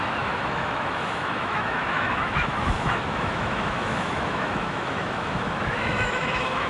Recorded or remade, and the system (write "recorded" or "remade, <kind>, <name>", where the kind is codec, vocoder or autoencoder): remade, autoencoder, DAC-VAE